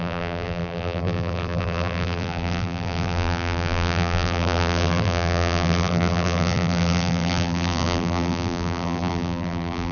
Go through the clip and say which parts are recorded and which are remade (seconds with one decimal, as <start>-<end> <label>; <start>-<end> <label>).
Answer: 0.0-9.9 remade